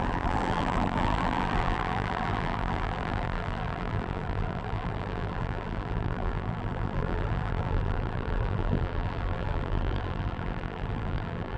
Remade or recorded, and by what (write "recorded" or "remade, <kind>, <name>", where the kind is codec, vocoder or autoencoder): remade, vocoder, BigVGAN v2